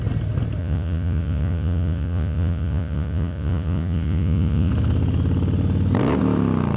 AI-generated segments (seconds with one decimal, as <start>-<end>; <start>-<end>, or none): 0.6-4.7